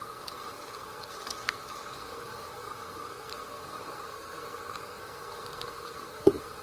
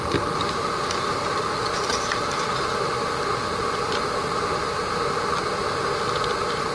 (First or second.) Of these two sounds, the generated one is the first